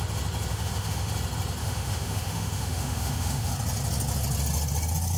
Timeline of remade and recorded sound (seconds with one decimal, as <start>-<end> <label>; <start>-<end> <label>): 0.0-0.5 recorded; 0.5-1.1 remade; 1.1-1.6 recorded; 1.6-3.5 remade; 3.5-5.2 recorded